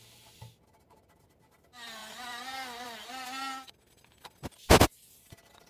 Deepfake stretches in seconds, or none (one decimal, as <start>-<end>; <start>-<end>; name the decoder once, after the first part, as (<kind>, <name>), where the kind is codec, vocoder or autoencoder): none